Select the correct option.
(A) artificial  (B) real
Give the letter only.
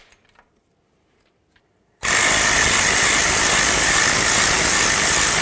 B